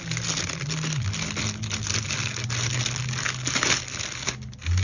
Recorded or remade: recorded